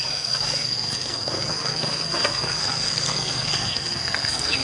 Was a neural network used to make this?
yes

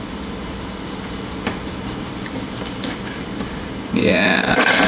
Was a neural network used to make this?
yes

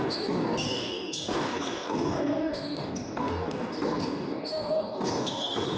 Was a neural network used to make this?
yes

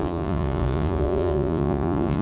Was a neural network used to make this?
yes